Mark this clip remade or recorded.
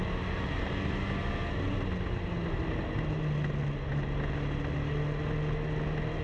recorded